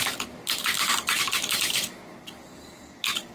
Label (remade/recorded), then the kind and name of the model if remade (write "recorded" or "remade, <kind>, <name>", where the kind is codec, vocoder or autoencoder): remade, codec, DAC